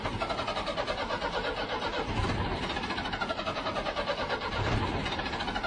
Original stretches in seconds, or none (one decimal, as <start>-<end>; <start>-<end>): 0.0-5.7